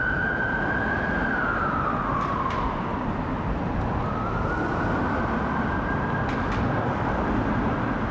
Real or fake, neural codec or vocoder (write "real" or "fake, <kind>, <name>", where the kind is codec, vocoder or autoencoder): real